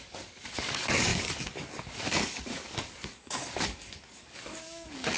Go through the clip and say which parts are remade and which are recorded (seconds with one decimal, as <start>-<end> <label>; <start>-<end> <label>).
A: 0.0-5.2 remade